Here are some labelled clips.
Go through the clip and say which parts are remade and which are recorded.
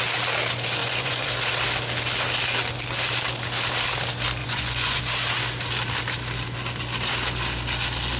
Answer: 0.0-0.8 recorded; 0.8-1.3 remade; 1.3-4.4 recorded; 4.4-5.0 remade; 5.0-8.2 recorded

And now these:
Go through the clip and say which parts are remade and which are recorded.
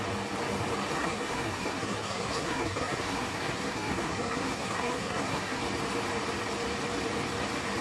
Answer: 0.0-0.9 recorded; 0.9-5.6 remade; 5.6-7.8 recorded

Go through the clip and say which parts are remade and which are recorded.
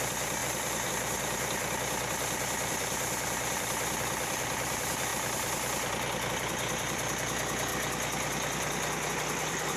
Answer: 0.0-5.1 remade; 5.1-6.3 recorded; 6.3-7.7 remade; 7.7-9.1 recorded; 9.1-9.8 remade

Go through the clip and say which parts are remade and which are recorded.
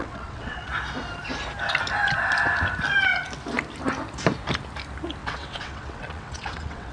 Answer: 0.0-0.7 remade; 0.7-5.2 recorded; 5.2-6.9 remade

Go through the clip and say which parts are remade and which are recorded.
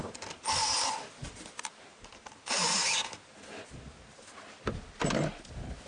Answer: 0.0-5.9 recorded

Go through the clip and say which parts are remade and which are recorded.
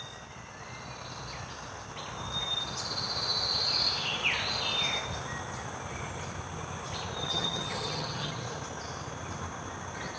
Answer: 0.0-7.2 recorded; 7.2-8.3 remade; 8.3-10.2 recorded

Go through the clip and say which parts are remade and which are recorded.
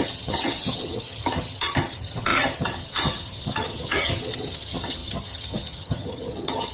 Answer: 0.0-6.7 remade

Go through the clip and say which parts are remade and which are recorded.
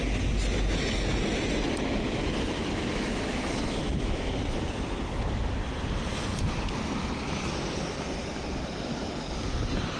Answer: 0.0-2.2 recorded; 2.2-4.3 remade; 4.3-10.0 recorded